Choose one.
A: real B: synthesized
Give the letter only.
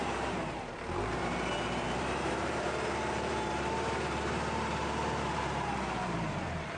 B